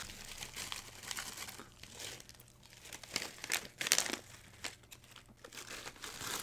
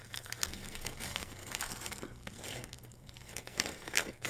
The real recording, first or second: first